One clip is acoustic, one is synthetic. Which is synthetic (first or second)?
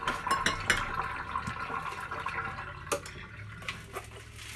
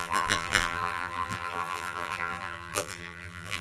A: second